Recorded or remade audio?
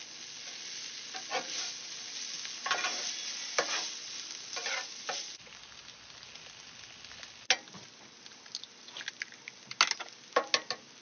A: recorded